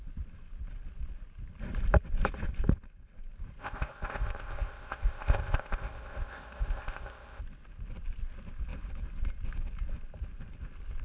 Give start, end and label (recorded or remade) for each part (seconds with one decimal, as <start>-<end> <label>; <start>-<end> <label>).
0.0-3.6 recorded; 3.6-7.4 remade; 7.4-11.0 recorded